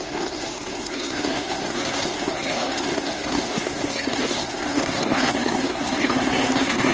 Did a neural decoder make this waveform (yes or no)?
yes